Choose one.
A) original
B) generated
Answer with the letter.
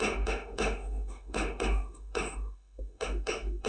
B